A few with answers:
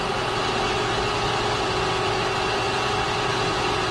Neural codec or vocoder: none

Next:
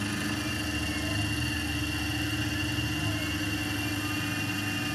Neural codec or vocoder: none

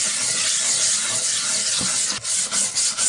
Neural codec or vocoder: none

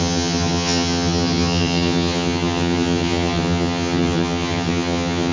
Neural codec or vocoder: vocoder, HiFi-GAN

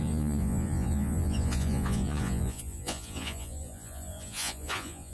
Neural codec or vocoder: vocoder, Vocos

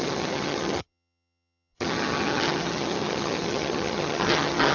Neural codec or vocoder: vocoder, HiFi-GAN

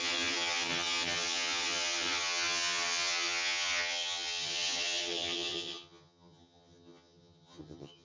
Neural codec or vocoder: vocoder, HiFi-GAN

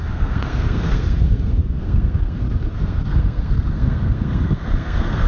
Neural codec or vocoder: codec, SNAC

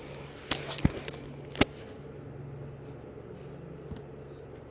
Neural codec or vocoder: none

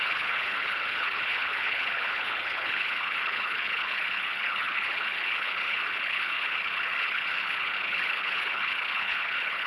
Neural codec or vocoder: codec, HILCodec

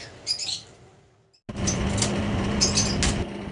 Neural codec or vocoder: none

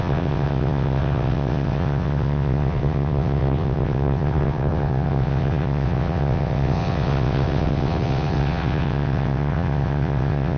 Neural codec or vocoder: vocoder, WaveNeXt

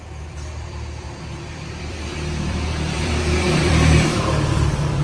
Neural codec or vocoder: vocoder, BigVGAN v2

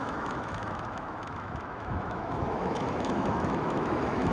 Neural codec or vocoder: autoencoder, DAC-VAE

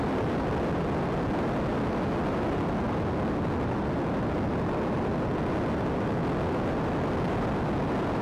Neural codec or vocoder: none